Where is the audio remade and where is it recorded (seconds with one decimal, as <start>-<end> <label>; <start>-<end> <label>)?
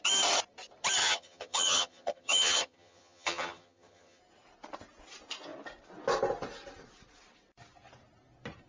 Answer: 0.0-1.0 recorded; 1.0-4.2 remade; 4.2-8.7 recorded